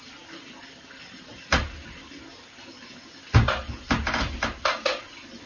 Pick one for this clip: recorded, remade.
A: recorded